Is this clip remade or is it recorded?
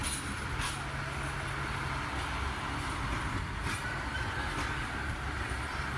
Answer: recorded